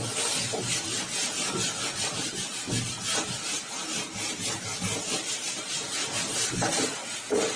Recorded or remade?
recorded